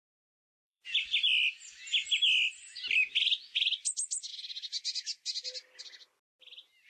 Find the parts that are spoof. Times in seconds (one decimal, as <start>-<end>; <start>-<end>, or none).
0.0-1.8; 3.9-4.3; 5.8-6.9